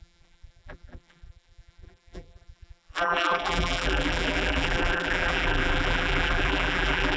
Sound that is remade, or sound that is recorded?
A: remade